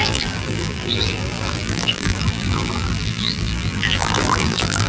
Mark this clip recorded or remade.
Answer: remade